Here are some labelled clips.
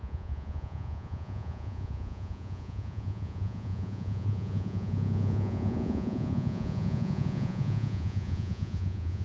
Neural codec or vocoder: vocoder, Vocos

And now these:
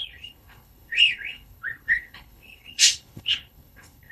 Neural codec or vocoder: codec, HILCodec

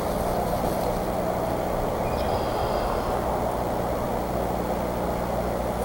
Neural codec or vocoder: none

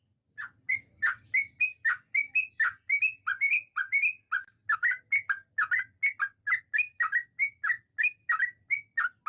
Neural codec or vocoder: none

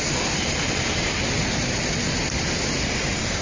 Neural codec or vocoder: none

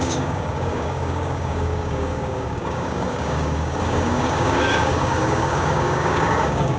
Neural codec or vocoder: codec, DAC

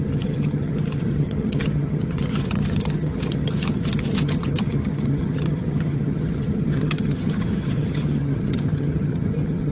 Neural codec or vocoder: vocoder, HiFi-GAN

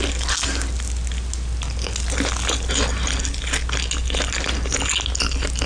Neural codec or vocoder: none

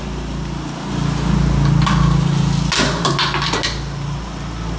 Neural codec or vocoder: none